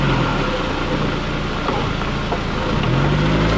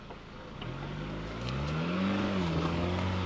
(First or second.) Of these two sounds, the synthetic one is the second